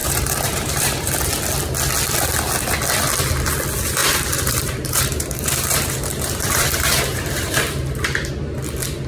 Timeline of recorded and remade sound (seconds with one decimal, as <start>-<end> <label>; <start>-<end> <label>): 0.0-1.1 remade; 1.1-4.0 recorded; 4.0-8.3 remade; 8.3-9.1 recorded

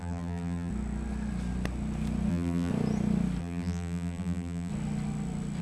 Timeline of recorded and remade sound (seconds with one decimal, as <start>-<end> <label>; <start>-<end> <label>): 0.0-0.7 remade; 0.7-2.3 recorded; 2.3-2.7 remade; 2.7-3.4 recorded; 3.4-4.7 remade; 4.7-5.6 recorded

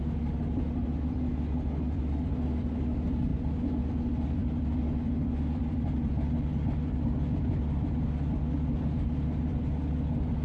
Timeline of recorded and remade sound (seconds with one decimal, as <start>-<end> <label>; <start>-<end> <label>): 0.0-3.3 recorded; 3.3-3.8 remade; 3.8-10.4 recorded

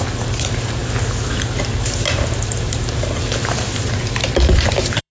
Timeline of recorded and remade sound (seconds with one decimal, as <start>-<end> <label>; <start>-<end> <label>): 0.0-0.8 remade; 0.8-1.5 recorded; 1.5-5.1 remade